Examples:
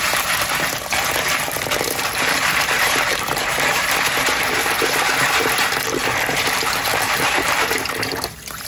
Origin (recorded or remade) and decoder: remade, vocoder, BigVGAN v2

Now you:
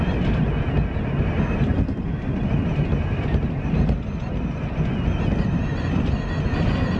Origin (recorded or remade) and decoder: recorded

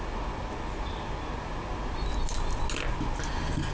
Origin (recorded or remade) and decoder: recorded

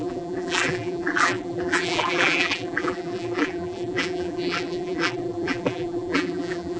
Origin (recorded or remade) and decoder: remade, vocoder, BigVGAN v2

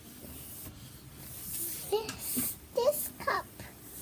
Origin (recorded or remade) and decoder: remade, vocoder, BigVGAN v2